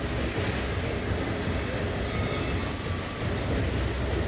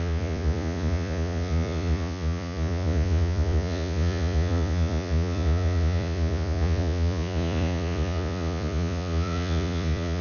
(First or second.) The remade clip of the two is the second